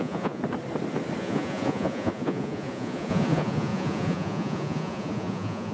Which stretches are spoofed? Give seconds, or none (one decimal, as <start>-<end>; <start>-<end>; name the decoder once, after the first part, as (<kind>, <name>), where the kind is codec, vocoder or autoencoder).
0.0-0.4 (vocoder, Vocos); 1.2-5.7